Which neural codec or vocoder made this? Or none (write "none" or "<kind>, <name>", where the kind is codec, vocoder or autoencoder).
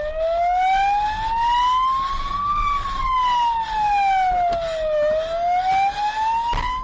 none